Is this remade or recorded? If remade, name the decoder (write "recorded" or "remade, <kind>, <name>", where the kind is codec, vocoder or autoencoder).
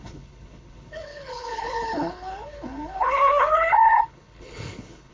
remade, codec, HILCodec